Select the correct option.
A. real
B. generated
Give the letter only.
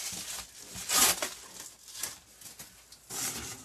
A